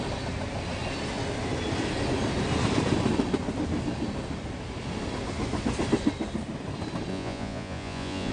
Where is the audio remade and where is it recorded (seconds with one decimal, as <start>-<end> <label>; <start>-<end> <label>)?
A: 0.0-7.1 recorded; 7.1-8.3 remade